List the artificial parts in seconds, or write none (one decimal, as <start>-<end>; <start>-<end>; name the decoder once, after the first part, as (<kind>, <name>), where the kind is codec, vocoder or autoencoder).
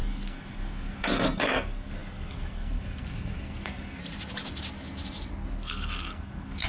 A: 0.0-4.0 (codec, SNAC); 5.3-6.7